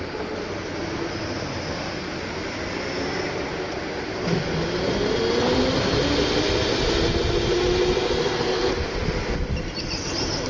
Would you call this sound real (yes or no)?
yes